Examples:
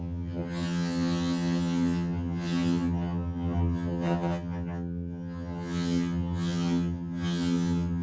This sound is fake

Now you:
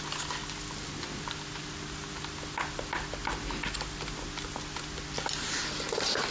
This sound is real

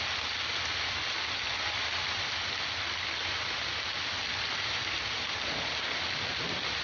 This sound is real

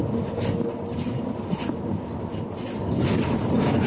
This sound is real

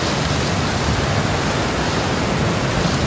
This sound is real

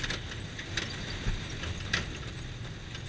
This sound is real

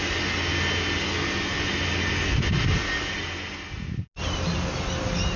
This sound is real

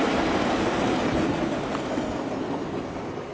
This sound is real